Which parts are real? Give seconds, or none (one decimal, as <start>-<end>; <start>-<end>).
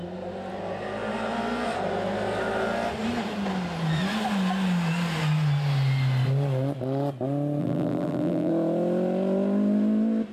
0.0-7.6; 8.5-10.3